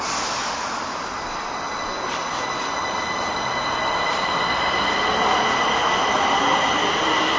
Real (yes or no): yes